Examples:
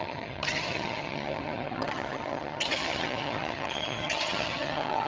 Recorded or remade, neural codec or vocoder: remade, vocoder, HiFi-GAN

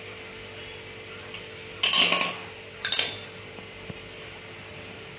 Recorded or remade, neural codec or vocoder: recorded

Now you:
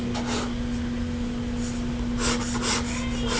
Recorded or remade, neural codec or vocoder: recorded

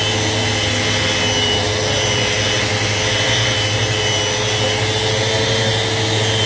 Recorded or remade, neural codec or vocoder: recorded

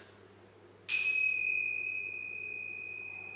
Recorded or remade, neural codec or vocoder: recorded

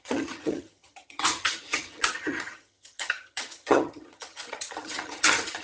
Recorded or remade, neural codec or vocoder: remade, vocoder, HiFi-GAN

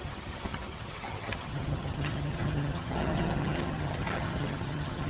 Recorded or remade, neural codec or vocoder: remade, vocoder, HiFi-GAN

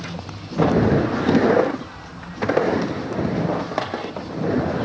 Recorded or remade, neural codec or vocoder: recorded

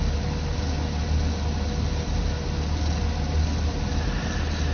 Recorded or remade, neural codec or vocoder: recorded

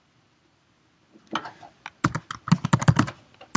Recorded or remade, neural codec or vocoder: recorded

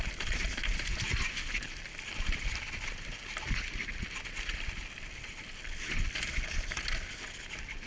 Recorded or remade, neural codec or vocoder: recorded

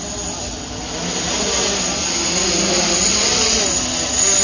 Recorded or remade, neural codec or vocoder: recorded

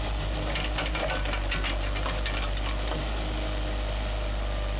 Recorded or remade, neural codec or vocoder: recorded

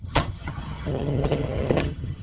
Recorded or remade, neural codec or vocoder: remade, vocoder, HiFi-GAN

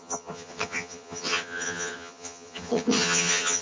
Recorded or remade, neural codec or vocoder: remade, vocoder, HiFi-GAN